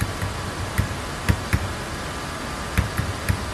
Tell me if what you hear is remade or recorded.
recorded